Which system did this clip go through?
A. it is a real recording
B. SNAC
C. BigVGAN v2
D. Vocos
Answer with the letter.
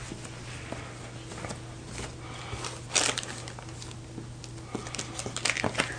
A